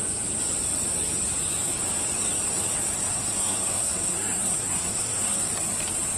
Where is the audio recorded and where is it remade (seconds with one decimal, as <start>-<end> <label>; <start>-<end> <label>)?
0.0-3.1 recorded; 3.1-5.5 remade; 5.5-6.2 recorded